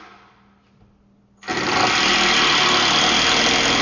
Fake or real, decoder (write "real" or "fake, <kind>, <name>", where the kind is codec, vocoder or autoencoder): real